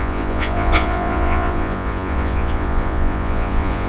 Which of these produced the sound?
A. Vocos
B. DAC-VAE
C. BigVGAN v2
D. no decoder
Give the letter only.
A